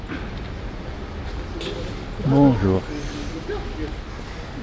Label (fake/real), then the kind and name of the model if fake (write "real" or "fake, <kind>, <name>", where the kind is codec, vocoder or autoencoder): real